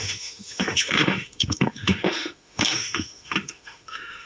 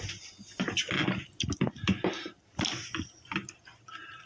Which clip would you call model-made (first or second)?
first